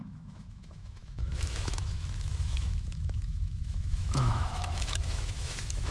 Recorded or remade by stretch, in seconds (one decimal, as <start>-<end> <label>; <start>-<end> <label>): 0.0-5.9 remade